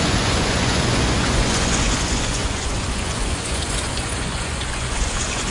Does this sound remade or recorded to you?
remade